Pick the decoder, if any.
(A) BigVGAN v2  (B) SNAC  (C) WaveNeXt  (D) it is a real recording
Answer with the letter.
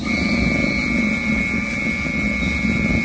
D